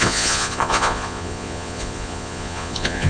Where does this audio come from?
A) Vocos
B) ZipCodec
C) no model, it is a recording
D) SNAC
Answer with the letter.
A